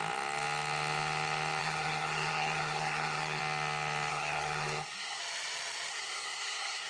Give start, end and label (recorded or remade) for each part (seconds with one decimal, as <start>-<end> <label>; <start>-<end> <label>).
0.0-1.6 recorded; 1.6-3.4 remade; 3.4-4.1 recorded; 4.1-5.2 remade; 5.2-5.9 recorded; 5.9-6.9 remade